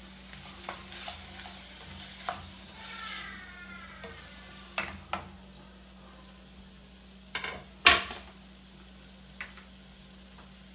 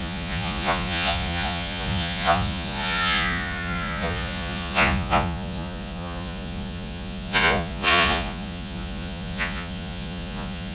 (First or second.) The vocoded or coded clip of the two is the second